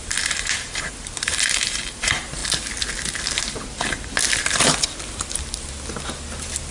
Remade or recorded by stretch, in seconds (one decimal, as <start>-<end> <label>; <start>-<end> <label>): 0.0-2.4 remade; 2.4-6.7 recorded

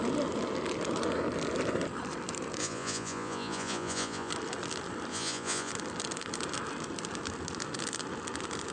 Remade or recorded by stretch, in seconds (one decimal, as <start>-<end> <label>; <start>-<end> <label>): 0.0-2.6 recorded; 2.6-4.3 remade; 4.3-5.1 recorded; 5.1-5.7 remade; 5.7-8.7 recorded